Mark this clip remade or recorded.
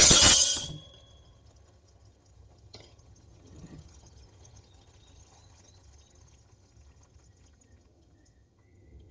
remade